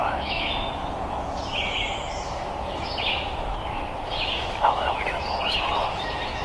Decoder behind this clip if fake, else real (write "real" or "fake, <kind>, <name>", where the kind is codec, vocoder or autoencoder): fake, autoencoder, DAC-VAE